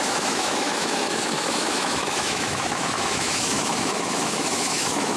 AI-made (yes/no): yes